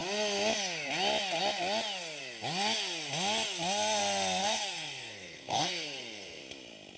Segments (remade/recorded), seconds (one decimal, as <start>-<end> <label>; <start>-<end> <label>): 0.0-4.4 recorded; 4.4-6.4 remade; 6.4-7.0 recorded